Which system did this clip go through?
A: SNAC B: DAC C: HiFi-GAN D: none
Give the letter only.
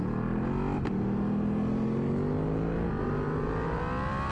D